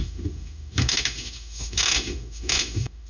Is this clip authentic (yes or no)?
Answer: no